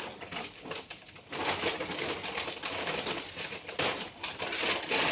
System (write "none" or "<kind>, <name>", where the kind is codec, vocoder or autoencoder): none